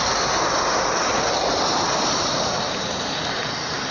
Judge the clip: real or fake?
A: real